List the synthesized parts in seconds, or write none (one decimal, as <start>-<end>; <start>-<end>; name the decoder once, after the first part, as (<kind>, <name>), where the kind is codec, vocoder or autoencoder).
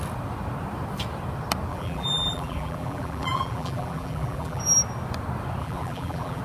1.7-4.6 (vocoder, BigVGAN v2); 5.6-6.4